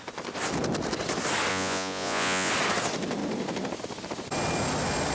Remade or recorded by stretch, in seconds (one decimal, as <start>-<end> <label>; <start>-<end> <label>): 0.0-1.5 recorded; 1.5-2.5 remade; 2.5-5.1 recorded